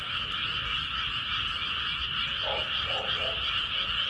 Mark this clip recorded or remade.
recorded